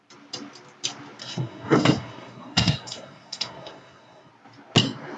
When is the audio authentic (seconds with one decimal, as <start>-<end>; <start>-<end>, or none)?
0.0-1.2; 4.3-5.2